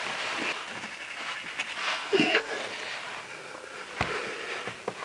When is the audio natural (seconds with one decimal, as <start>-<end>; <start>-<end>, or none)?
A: 0.0-1.8; 2.5-5.0